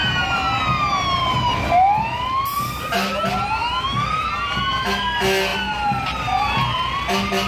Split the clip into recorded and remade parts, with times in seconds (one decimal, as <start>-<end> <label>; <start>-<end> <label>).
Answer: 0.0-3.6 recorded; 3.6-4.3 remade; 4.3-7.5 recorded

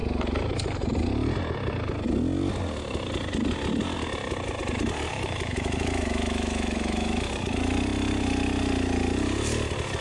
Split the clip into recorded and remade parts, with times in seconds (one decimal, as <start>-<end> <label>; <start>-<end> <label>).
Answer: 0.0-5.1 recorded; 5.1-7.3 remade; 7.3-10.0 recorded

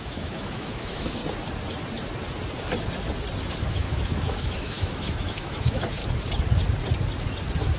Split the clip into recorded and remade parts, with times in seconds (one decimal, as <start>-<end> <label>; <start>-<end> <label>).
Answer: 0.0-1.2 remade; 1.2-3.7 recorded; 3.7-6.0 remade; 6.0-7.8 recorded